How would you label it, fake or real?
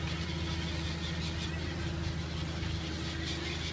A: real